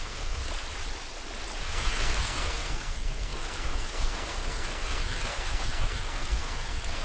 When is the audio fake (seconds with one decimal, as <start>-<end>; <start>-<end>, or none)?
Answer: 0.0-0.4; 1.6-7.0